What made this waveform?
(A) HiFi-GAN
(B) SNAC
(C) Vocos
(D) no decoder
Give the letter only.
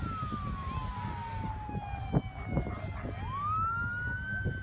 D